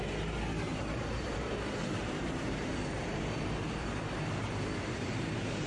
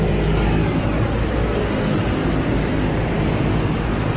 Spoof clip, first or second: first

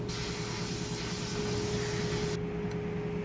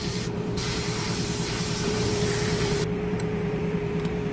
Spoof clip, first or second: second